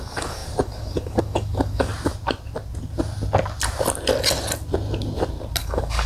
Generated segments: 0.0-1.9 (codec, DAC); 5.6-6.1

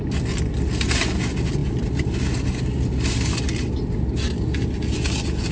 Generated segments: none